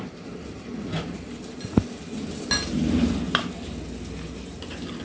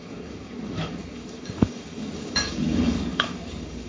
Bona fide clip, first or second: first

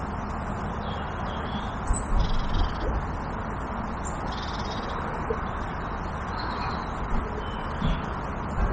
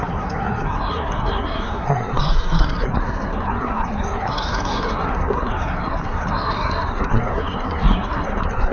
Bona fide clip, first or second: first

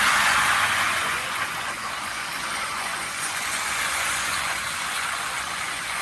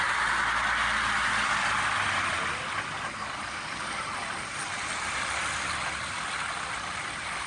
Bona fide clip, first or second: second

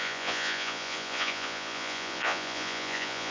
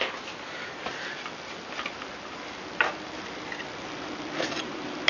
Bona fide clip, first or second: second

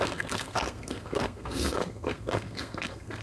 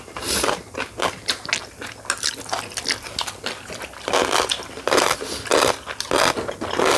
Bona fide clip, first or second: second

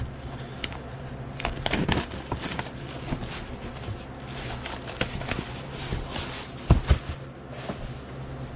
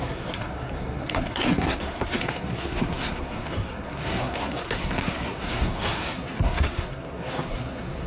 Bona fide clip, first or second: first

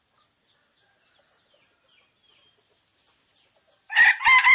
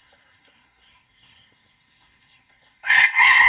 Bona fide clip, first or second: first